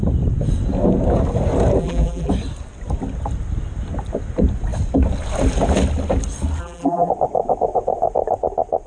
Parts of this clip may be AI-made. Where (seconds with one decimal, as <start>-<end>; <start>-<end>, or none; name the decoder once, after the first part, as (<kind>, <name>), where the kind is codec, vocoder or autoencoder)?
1.8-2.3 (vocoder, BigVGAN v2); 6.6-7.1